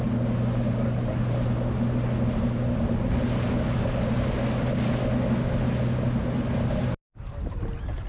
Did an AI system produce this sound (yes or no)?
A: no